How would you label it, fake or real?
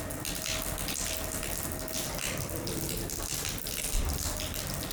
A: real